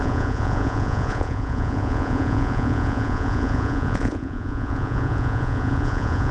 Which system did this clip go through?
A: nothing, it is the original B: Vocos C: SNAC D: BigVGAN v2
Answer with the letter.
B